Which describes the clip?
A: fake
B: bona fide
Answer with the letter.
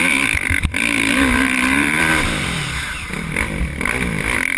A